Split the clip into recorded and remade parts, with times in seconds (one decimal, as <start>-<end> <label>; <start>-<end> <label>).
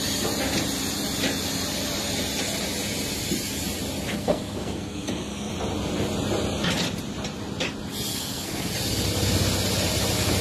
0.0-4.1 recorded; 4.1-5.5 remade; 5.5-8.1 recorded; 8.1-8.7 remade; 8.7-10.4 recorded